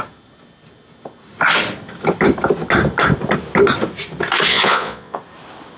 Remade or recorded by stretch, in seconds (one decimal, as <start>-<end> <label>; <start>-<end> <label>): 0.0-4.5 recorded; 4.5-5.2 remade; 5.2-5.8 recorded